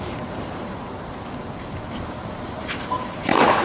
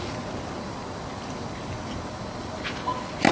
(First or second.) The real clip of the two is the second